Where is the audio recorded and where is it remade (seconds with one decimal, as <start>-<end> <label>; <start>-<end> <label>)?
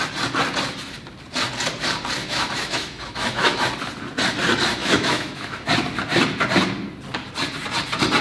0.0-2.2 recorded; 2.2-3.6 remade; 3.6-4.8 recorded; 4.8-5.7 remade; 5.7-8.2 recorded